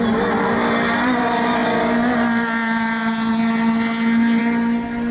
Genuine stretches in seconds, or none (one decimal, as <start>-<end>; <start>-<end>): 0.0-5.1